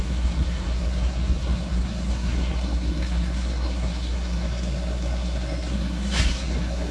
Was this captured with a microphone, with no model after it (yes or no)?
no